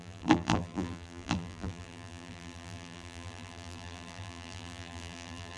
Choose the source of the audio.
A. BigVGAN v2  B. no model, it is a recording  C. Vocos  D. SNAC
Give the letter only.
A